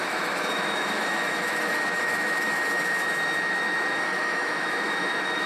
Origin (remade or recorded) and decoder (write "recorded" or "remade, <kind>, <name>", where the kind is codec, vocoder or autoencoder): remade, autoencoder, DAC-VAE